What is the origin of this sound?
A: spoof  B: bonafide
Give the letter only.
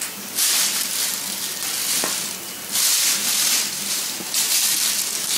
B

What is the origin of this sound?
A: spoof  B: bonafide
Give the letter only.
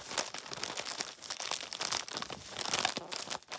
B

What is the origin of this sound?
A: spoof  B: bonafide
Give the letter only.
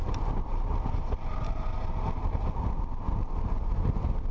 B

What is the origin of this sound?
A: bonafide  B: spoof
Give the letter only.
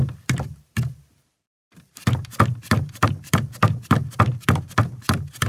A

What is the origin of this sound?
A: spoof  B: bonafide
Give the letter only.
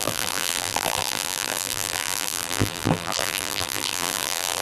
A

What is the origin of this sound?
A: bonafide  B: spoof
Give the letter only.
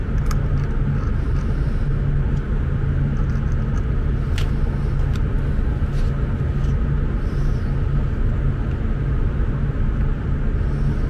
A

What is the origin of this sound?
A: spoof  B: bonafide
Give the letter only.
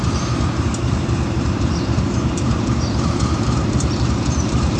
A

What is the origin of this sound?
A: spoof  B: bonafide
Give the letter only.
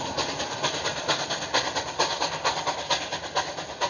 B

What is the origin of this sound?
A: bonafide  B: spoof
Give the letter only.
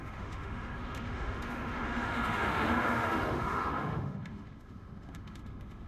B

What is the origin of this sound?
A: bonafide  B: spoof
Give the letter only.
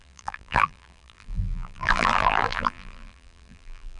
B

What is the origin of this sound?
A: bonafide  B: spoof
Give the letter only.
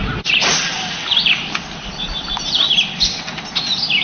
A